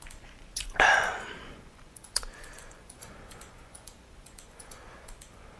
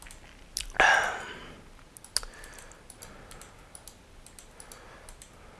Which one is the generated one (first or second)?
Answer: first